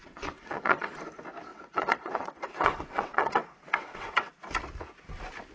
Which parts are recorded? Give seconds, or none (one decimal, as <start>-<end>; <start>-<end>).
0.9-1.5; 4.3-5.5